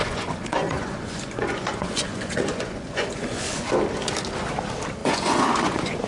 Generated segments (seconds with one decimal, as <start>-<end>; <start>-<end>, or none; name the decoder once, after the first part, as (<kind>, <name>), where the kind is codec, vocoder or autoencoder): 0.0-3.7 (vocoder, Vocos); 5.0-6.1